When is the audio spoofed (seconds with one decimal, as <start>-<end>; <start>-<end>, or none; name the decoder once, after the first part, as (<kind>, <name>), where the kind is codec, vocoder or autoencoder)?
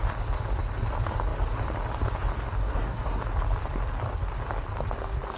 2.6-3.2 (codec, SNAC)